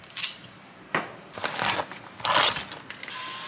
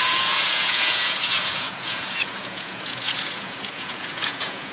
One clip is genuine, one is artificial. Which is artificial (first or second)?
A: second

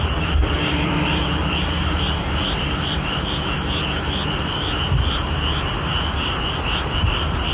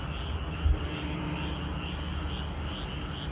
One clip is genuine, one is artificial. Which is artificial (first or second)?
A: first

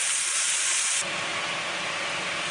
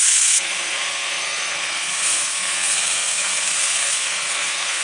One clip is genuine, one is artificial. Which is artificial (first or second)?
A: second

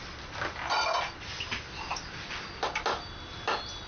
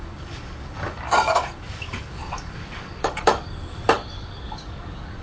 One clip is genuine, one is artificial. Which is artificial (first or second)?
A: second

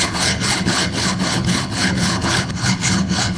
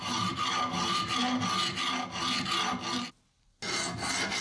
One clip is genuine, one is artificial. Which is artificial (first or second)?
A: first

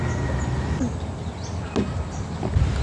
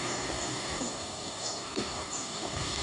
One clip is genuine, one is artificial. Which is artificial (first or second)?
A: second